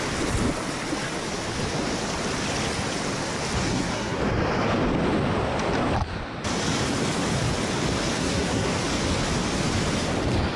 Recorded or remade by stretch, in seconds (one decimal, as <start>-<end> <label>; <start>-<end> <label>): 0.0-3.6 recorded; 3.6-4.2 remade; 4.2-8.2 recorded; 8.2-8.7 remade; 8.7-10.6 recorded